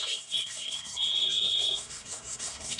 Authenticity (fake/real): fake